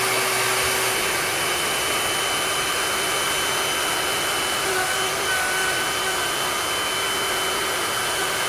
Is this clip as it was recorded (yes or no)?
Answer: yes